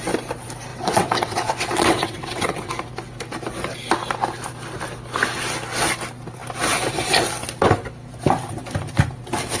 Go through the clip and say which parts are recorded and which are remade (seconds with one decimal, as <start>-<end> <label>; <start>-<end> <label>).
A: 0.0-0.7 recorded; 0.7-2.7 remade; 2.7-9.6 recorded